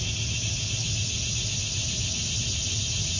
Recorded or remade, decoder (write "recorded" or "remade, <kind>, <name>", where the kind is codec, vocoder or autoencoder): recorded